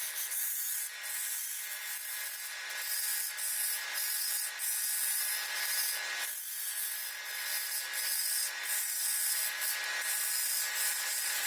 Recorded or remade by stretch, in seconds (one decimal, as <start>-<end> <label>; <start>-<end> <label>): 0.0-1.1 remade; 1.1-10.9 recorded; 10.9-11.5 remade